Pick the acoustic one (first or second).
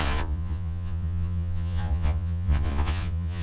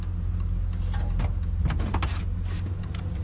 second